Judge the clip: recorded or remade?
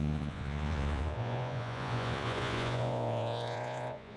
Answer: remade